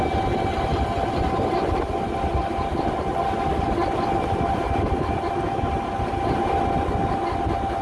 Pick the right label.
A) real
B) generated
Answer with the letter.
A